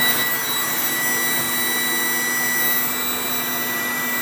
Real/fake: real